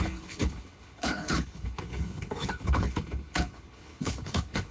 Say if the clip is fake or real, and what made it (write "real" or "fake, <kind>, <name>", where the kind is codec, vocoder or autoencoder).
fake, codec, HILCodec